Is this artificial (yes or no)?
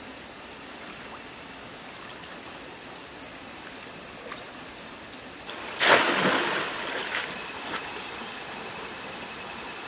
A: no